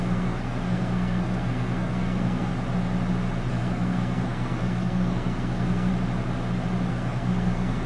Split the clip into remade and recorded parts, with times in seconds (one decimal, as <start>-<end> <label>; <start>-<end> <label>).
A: 0.0-2.5 remade; 2.5-3.5 recorded; 3.5-5.9 remade; 5.9-6.9 recorded; 6.9-7.9 remade